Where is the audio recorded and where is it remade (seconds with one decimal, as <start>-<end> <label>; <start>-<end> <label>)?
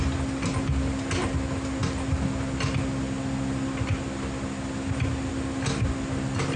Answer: 0.0-6.6 recorded